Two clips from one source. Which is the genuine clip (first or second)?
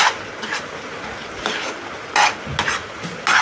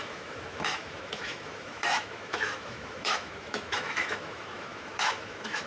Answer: first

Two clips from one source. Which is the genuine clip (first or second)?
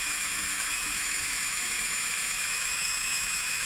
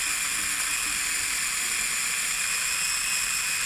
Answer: second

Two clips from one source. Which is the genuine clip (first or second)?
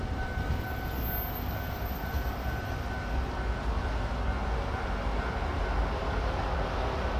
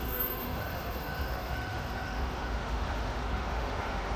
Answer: first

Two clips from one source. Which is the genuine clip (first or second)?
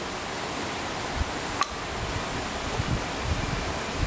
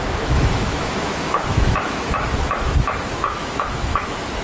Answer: first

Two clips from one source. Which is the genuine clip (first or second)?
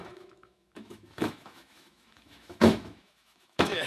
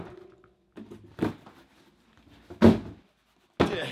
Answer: second